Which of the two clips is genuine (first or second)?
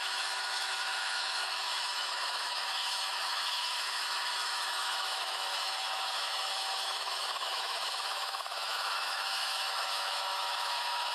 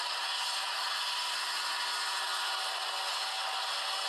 second